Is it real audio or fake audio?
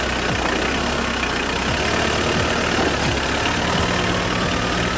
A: real